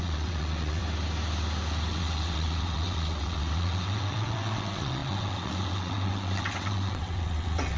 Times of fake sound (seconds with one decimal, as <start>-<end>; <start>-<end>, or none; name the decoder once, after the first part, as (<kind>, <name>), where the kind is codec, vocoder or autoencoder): 0.0-0.8 (vocoder, WaveNeXt); 1.9-7.8